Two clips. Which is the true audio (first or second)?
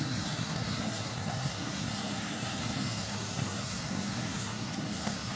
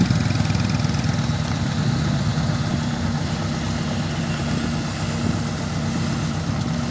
second